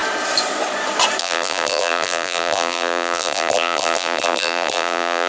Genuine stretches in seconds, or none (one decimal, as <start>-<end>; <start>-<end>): 0.0-1.2